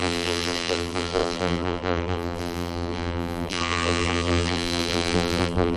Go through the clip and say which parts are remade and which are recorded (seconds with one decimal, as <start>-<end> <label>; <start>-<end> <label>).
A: 0.0-5.8 remade